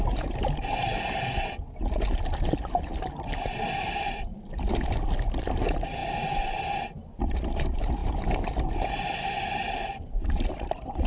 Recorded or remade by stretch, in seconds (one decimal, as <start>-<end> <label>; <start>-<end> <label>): 0.0-0.9 remade; 0.9-2.1 recorded; 2.1-4.3 remade; 4.3-5.6 recorded; 5.6-11.1 remade